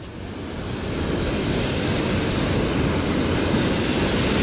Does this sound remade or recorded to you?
recorded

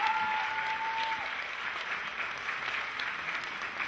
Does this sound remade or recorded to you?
recorded